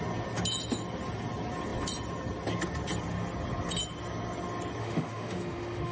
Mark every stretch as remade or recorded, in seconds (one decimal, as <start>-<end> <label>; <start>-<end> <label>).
0.0-4.8 recorded; 4.8-5.9 remade